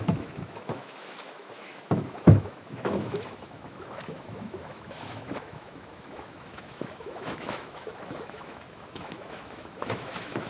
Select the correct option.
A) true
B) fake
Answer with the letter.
B